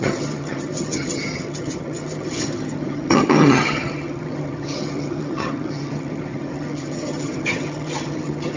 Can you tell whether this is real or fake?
fake